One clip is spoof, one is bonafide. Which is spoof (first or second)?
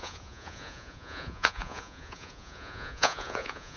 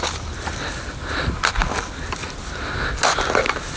first